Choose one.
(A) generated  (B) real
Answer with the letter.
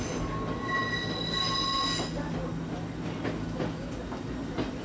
B